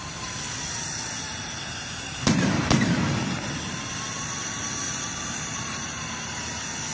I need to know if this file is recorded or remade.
recorded